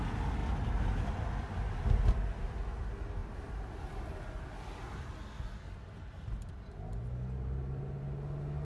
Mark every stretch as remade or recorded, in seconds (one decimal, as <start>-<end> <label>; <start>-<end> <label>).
0.0-8.6 recorded